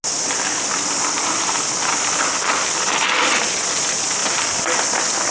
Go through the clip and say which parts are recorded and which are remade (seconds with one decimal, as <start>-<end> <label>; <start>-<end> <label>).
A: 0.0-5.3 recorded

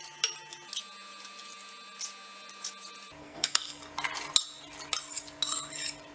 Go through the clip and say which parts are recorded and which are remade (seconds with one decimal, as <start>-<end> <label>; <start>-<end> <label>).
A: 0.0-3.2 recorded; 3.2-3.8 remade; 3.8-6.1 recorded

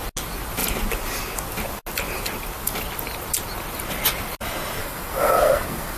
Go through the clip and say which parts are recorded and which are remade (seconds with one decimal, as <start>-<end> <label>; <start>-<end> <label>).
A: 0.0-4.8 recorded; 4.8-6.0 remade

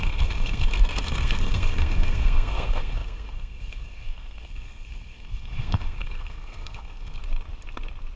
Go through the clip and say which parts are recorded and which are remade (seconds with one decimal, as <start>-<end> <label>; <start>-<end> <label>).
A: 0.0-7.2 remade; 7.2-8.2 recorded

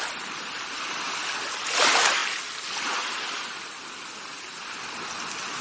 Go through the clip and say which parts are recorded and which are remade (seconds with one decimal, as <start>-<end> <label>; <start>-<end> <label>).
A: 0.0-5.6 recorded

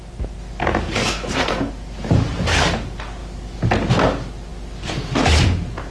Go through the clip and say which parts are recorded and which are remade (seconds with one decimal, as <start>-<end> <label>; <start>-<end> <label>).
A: 0.0-1.0 recorded; 1.0-1.7 remade; 1.7-5.9 recorded

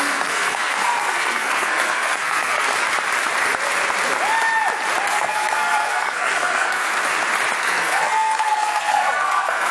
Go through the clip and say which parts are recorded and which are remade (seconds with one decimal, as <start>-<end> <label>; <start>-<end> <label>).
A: 0.0-2.7 remade; 2.7-5.1 recorded; 5.1-7.0 remade; 7.0-7.6 recorded; 7.6-9.7 remade

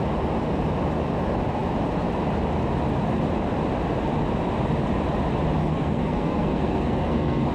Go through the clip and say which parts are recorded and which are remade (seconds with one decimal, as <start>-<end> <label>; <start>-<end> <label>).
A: 0.0-5.6 recorded; 5.6-7.5 remade